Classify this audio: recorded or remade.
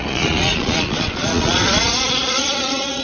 remade